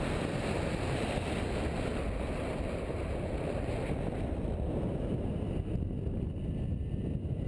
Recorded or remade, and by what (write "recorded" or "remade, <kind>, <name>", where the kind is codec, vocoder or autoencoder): remade, vocoder, BigVGAN v2